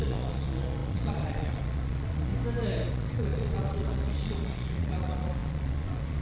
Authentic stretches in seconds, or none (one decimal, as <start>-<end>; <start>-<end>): 2.3-2.9